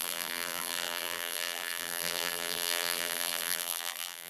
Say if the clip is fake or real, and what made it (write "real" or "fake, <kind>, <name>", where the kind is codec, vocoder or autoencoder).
fake, vocoder, BigVGAN v2